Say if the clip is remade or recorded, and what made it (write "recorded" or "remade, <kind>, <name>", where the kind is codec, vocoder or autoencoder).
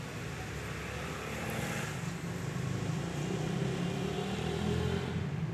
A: recorded